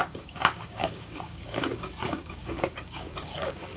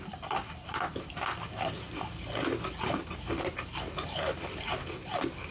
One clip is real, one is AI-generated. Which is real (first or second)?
second